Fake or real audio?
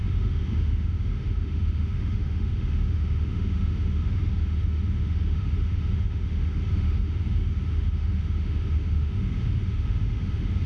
fake